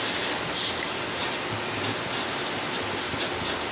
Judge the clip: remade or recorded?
recorded